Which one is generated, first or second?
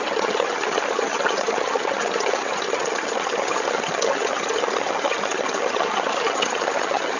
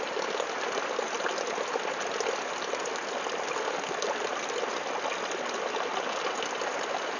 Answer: first